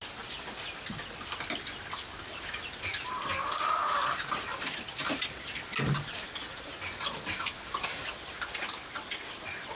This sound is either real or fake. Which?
real